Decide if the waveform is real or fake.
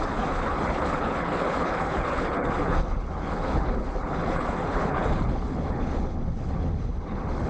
fake